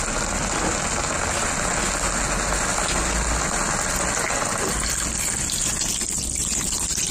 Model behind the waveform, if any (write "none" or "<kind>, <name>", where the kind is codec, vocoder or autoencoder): none